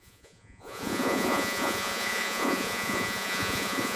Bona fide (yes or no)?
no